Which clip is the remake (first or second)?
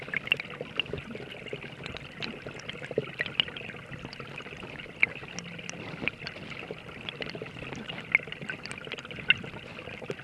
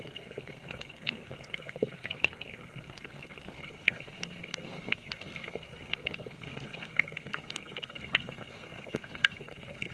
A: second